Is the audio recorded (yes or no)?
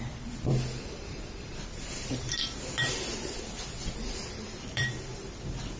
no